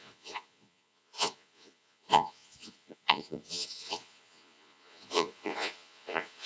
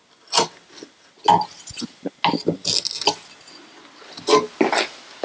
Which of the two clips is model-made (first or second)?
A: first